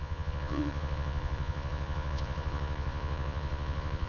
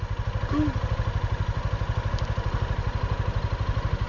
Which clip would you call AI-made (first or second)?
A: first